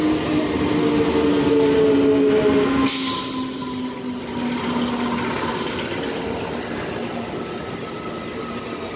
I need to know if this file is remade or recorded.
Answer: recorded